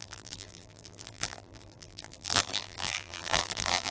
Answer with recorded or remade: remade